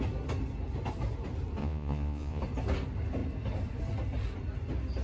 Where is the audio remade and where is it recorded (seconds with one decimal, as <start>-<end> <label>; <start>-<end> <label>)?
0.0-1.6 recorded; 1.6-2.4 remade; 2.4-5.0 recorded

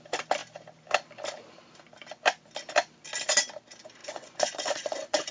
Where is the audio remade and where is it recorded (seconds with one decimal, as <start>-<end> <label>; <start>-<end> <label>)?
0.0-4.0 recorded; 4.0-5.3 remade

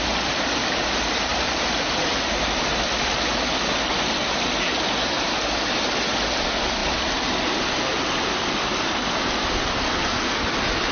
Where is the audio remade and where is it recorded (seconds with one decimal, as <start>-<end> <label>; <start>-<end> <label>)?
0.0-10.9 recorded